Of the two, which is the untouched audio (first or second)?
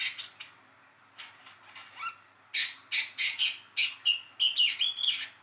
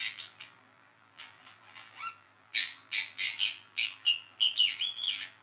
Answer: first